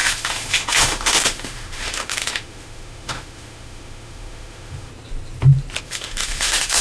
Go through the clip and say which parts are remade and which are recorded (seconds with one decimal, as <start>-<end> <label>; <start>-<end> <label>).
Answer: 0.0-4.9 remade; 4.9-5.8 recorded; 5.8-6.8 remade